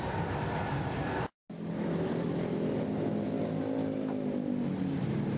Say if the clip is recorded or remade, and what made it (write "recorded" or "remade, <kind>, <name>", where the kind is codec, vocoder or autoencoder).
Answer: recorded